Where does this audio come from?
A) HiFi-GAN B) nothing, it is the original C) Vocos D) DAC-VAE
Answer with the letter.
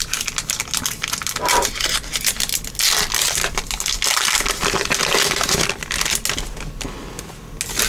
B